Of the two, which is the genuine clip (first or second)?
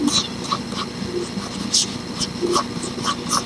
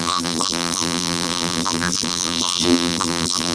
first